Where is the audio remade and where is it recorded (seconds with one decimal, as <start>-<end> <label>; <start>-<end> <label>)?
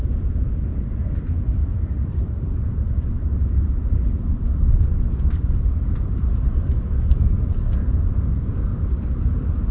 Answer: 0.0-1.6 recorded; 1.6-3.1 remade; 3.1-8.7 recorded; 8.7-9.7 remade